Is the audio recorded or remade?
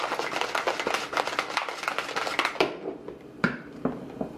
recorded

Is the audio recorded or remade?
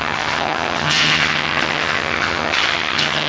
remade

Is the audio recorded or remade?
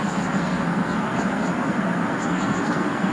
remade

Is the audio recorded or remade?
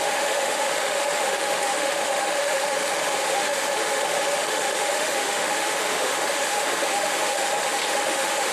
remade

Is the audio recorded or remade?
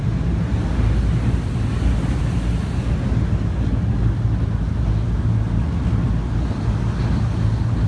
recorded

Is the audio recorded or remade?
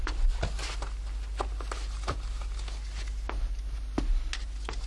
recorded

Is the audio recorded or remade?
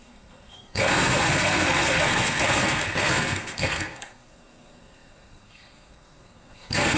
remade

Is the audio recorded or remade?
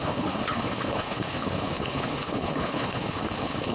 remade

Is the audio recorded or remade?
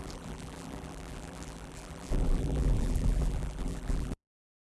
remade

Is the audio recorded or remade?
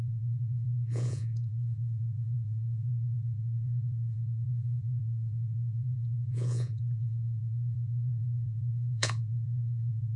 remade